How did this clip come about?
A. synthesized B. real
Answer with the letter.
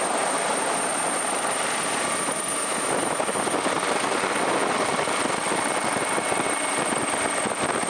B